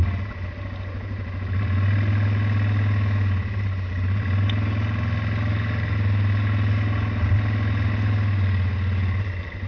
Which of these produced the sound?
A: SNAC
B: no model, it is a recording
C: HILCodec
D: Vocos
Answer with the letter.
B